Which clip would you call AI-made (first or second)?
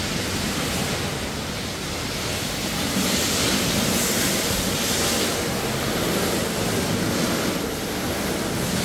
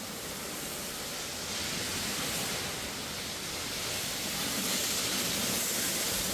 second